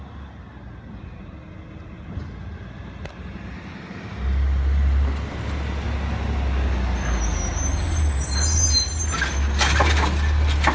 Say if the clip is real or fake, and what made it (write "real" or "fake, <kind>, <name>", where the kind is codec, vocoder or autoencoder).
real